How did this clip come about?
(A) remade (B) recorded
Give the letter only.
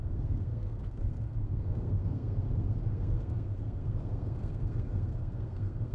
A